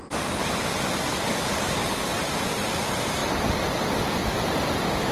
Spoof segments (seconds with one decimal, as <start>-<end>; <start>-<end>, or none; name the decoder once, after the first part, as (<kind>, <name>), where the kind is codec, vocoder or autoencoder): 1.1-2.2 (codec, DAC)